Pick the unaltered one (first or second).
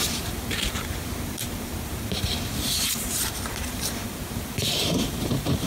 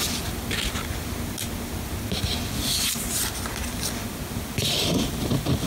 second